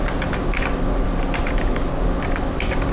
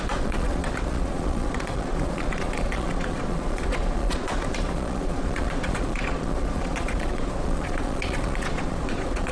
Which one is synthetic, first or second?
second